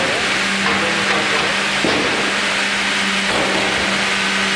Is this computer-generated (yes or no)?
no